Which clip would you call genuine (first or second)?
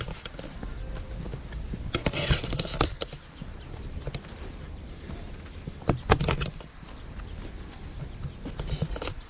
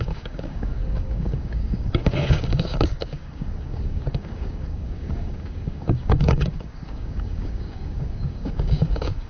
first